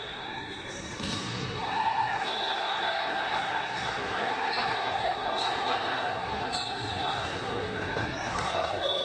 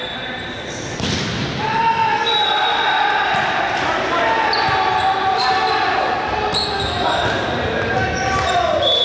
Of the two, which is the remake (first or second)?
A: first